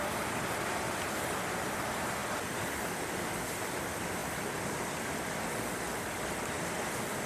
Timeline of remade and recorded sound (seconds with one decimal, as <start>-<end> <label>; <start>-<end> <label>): 0.0-7.3 recorded